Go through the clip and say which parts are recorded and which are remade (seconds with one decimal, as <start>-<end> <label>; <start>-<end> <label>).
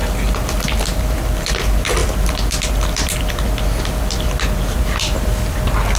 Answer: 0.0-1.5 remade; 1.5-2.0 recorded; 2.0-5.6 remade; 5.6-6.0 recorded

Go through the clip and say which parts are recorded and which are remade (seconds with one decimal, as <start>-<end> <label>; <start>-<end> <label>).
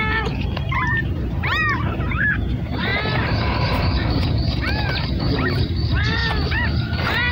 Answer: 0.0-6.2 remade; 6.2-7.3 recorded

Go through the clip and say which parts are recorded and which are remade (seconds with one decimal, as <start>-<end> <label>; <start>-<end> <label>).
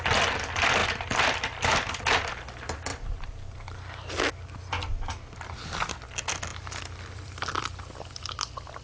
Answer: 0.0-0.8 recorded; 0.8-1.9 remade; 1.9-2.9 recorded; 2.9-3.5 remade; 3.5-6.5 recorded; 6.5-7.6 remade; 7.6-8.8 recorded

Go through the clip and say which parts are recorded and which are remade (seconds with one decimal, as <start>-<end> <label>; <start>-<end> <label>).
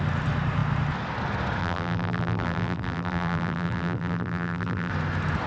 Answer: 0.0-1.6 recorded; 1.6-4.9 remade; 4.9-5.5 recorded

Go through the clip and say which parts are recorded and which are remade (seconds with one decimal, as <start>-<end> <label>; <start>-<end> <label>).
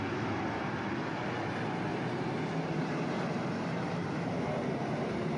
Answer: 0.0-1.9 recorded; 1.9-5.4 remade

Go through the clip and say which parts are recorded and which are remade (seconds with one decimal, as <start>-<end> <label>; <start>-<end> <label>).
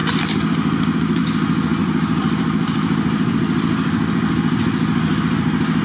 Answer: 0.0-1.8 recorded; 1.8-5.2 remade; 5.2-5.8 recorded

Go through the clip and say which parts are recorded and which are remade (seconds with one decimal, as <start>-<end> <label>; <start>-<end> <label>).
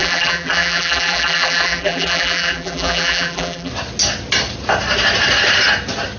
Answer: 0.0-3.7 remade; 3.7-6.2 recorded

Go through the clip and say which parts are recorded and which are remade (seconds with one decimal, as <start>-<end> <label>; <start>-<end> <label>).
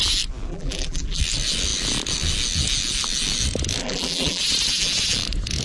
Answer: 0.0-0.5 recorded; 0.5-1.2 remade; 1.2-3.8 recorded; 3.8-4.4 remade; 4.4-5.6 recorded